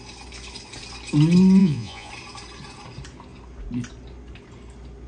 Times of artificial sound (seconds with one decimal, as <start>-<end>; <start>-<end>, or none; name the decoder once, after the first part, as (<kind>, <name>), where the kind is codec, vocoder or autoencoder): 1.6-2.1 (vocoder, Vocos)